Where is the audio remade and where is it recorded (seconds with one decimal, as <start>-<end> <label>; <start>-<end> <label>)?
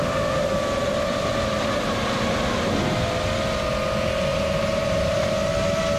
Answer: 0.0-1.3 recorded; 1.3-2.3 remade; 2.3-4.3 recorded; 4.3-5.2 remade; 5.2-6.0 recorded